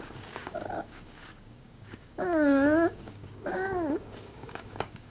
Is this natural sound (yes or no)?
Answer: no